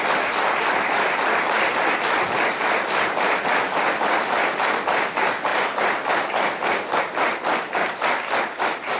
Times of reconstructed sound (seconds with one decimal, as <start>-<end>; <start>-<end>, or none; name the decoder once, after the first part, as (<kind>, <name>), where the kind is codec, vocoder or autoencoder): none